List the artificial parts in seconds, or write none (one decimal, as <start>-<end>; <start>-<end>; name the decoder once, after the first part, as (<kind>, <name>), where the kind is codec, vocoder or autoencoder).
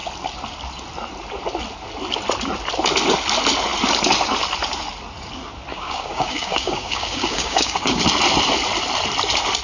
5.7-8.0 (codec, DAC)